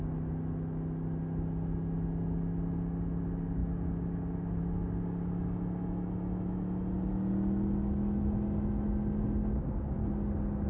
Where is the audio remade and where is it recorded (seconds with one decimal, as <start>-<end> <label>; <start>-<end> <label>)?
0.0-10.7 recorded